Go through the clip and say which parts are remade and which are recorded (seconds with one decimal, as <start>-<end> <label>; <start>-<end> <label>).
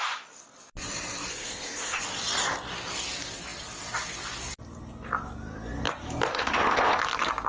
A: 0.0-1.3 recorded; 1.3-2.0 remade; 2.0-6.3 recorded; 6.3-7.0 remade; 7.0-7.5 recorded